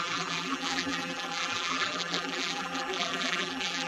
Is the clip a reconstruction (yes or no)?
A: yes